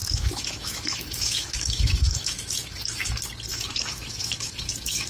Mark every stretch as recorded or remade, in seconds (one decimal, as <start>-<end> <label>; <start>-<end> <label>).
0.0-3.1 remade; 3.1-3.5 recorded; 3.5-5.1 remade